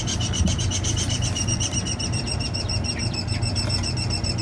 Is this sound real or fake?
fake